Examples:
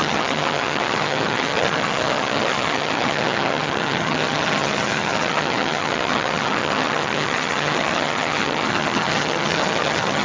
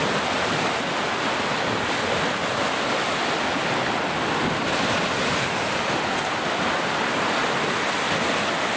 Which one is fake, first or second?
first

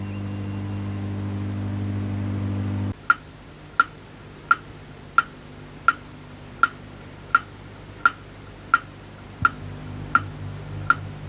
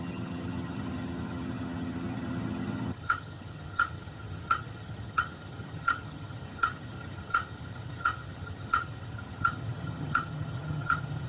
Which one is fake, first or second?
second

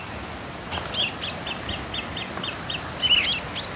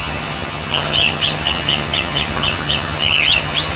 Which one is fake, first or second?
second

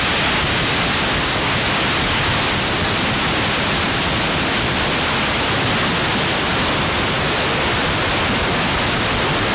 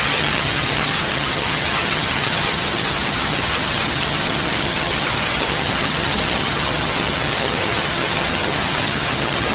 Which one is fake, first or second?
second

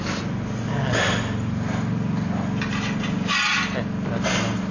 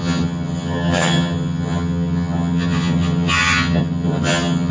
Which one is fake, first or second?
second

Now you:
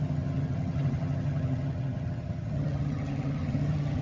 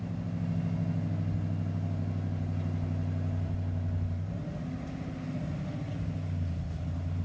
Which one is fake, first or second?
first